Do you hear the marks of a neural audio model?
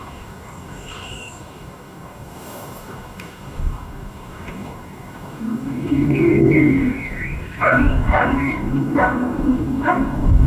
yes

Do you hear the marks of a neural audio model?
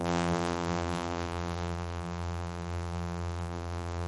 yes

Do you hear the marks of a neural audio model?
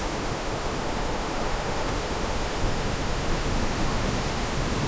yes